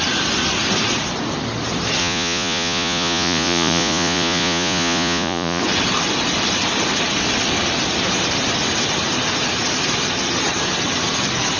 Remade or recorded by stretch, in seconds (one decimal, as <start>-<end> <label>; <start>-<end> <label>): 0.0-2.0 recorded; 2.0-5.6 remade; 5.6-11.6 recorded